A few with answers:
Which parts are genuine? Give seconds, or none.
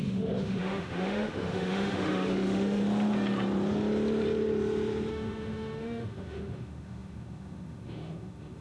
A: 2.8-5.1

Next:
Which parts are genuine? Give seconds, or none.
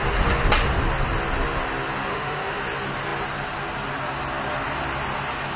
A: 0.0-2.1; 2.6-5.6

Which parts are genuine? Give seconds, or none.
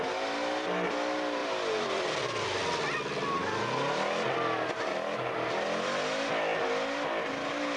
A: 0.0-1.4; 3.6-7.8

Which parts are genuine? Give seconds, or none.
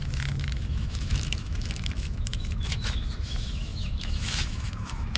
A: none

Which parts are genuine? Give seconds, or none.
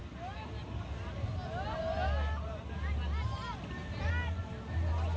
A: 0.0-5.2